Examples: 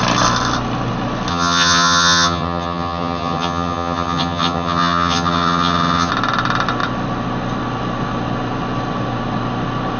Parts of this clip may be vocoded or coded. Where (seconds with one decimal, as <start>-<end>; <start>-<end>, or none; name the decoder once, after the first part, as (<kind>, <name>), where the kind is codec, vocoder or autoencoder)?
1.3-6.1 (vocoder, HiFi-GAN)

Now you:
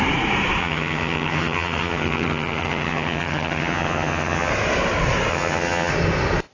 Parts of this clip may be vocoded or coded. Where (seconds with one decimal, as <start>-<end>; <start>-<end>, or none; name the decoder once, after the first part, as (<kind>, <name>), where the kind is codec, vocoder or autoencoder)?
0.6-4.5 (vocoder, HiFi-GAN); 5.3-5.9

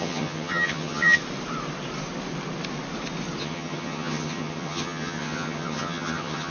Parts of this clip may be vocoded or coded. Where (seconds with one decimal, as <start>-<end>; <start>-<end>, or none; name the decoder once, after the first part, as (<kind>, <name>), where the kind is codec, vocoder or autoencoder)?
0.0-1.2 (vocoder, HiFi-GAN); 3.4-6.5

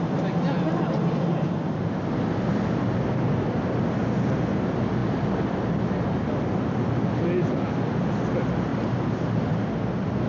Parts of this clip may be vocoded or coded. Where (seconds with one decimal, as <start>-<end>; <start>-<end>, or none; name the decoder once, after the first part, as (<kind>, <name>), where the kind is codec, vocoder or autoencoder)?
none

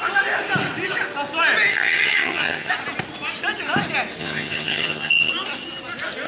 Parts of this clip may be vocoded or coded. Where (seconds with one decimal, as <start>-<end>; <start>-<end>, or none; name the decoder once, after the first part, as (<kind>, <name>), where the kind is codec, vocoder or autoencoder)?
1.7-2.7 (vocoder, HiFi-GAN); 4.2-5.3

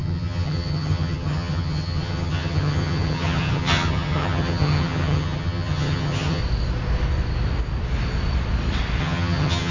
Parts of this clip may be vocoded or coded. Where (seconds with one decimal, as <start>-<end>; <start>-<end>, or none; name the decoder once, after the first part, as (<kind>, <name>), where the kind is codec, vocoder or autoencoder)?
0.0-6.4 (vocoder, HiFi-GAN); 9.0-9.7

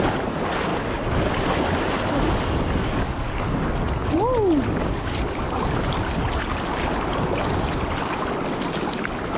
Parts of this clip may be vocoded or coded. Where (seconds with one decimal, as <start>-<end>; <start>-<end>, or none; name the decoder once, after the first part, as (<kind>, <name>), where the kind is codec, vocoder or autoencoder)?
none

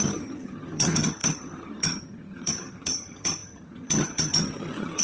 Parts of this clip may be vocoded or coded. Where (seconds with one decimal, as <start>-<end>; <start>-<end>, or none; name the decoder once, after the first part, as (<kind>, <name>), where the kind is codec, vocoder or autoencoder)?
0.0-5.0 (vocoder, HiFi-GAN)